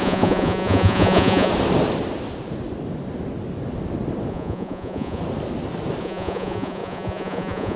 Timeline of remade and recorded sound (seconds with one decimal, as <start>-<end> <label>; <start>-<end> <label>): 0.0-1.5 remade; 1.5-4.3 recorded; 4.3-5.2 remade; 5.2-6.0 recorded; 6.0-7.8 remade